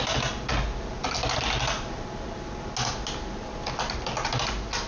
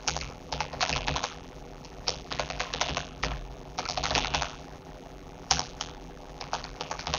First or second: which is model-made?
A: second